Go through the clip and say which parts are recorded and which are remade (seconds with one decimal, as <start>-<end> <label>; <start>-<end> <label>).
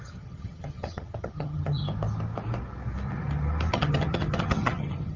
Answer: 0.0-1.8 remade; 1.8-3.7 recorded; 3.7-5.2 remade